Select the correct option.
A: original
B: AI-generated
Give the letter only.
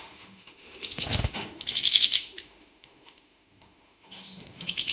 B